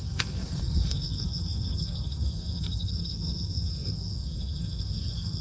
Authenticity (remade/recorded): remade